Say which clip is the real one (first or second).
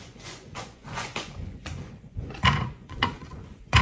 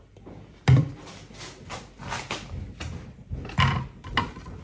second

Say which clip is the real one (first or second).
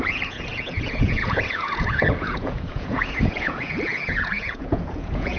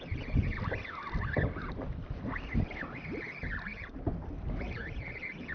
second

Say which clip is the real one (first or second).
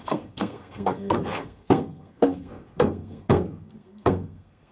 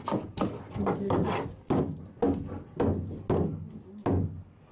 second